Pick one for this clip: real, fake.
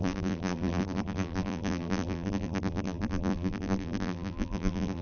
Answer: fake